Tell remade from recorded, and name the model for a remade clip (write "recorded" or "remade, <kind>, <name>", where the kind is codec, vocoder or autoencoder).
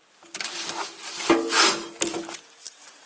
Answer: recorded